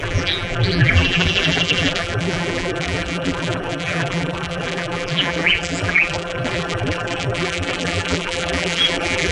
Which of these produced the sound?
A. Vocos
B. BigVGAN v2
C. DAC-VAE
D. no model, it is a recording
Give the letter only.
B